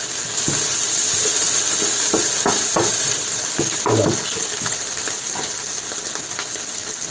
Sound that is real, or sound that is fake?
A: real